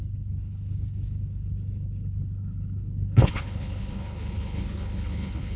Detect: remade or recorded remade